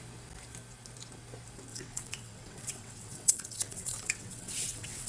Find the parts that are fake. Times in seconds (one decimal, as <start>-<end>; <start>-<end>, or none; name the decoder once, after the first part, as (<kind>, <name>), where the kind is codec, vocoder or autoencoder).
1.7-5.1 (vocoder, WaveNeXt)